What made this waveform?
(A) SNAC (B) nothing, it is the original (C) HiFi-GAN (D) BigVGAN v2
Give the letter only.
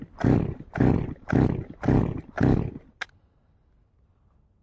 B